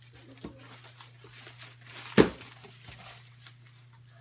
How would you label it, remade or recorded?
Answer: recorded